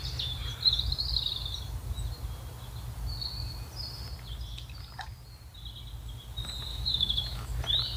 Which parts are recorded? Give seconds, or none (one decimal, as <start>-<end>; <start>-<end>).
0.0-6.7; 7.5-8.0

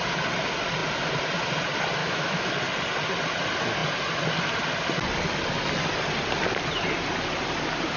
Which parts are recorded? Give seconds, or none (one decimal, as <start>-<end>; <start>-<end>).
0.0-2.0; 2.5-8.0

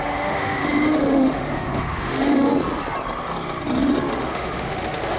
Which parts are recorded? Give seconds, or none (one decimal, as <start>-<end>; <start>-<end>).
2.5-4.1

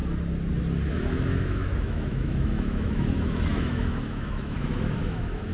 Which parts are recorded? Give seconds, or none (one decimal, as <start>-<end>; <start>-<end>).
0.0-0.9

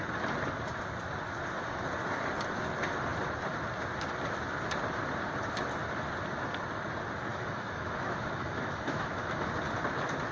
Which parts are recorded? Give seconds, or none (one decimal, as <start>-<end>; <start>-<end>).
0.0-7.3; 9.5-10.3

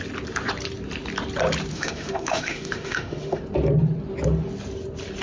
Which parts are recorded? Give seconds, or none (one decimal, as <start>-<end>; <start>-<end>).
0.0-1.7; 3.4-5.2